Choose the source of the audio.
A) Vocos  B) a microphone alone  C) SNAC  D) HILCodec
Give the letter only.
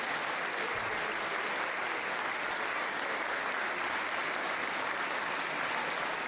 B